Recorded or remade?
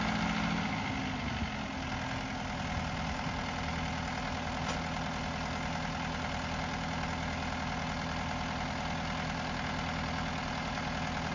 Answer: recorded